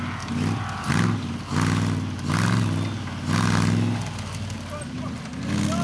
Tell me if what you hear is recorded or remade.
recorded